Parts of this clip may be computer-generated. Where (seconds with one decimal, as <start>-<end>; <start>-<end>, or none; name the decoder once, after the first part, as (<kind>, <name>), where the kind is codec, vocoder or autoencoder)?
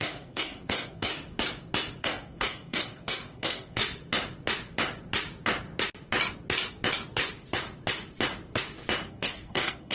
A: 0.0-1.1 (codec, SNAC); 2.0-3.8; 9.1-9.9